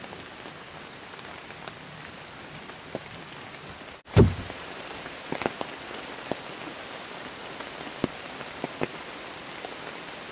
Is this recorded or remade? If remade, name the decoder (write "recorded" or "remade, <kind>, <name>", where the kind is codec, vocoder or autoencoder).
recorded